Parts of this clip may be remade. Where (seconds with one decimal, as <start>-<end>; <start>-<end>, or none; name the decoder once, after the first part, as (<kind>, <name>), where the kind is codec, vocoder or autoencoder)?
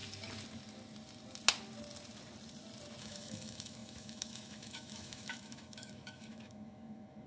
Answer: 3.0-7.3 (autoencoder, DAC-VAE)